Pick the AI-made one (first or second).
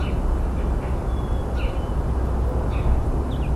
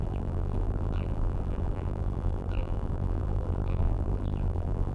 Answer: second